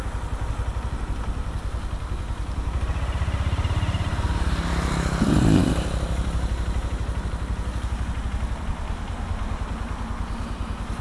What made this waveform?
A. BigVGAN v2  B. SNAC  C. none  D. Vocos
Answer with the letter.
C